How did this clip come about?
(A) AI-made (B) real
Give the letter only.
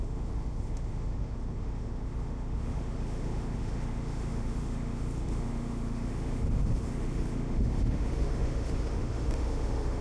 A